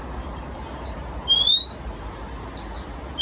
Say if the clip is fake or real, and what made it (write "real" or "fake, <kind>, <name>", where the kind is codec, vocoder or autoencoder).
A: real